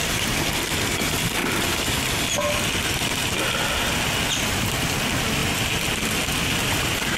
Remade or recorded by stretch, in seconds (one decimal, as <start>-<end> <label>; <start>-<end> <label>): 0.0-1.4 remade; 1.4-2.2 recorded; 2.2-3.2 remade; 3.2-4.3 recorded; 4.3-5.4 remade; 5.4-6.4 recorded; 6.4-7.2 remade